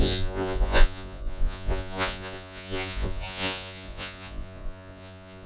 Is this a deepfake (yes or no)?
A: yes